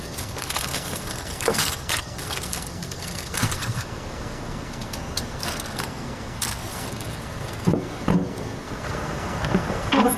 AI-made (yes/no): yes